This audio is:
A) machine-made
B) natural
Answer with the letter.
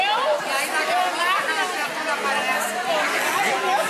B